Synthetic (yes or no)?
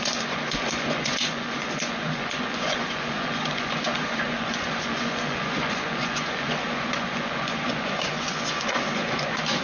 yes